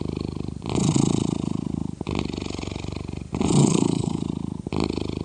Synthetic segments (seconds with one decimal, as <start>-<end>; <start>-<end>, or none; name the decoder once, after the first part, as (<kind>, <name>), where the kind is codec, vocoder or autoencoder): 3.6-4.2 (codec, SNAC)